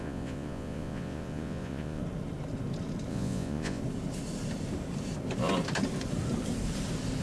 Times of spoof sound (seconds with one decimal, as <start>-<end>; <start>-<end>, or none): 0.0-2.0; 3.1-3.8